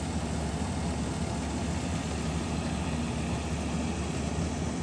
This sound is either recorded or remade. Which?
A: recorded